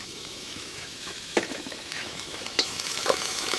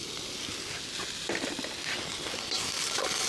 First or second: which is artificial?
first